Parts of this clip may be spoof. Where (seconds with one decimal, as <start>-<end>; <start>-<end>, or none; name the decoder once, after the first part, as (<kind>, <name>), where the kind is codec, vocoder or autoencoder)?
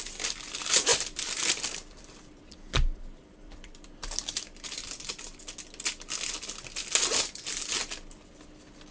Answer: 0.9-5.2 (vocoder, BigVGAN v2)